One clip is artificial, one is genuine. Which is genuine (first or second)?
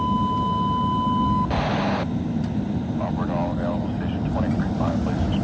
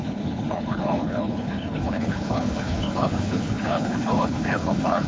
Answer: first